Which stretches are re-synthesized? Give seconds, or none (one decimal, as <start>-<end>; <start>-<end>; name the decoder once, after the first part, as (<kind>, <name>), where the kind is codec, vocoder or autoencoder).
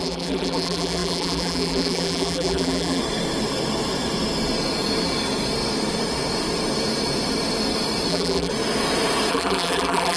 0.0-3.0 (vocoder, BigVGAN v2); 8.1-8.5; 9.3-10.2